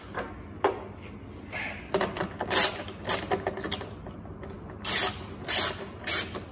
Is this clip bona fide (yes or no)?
yes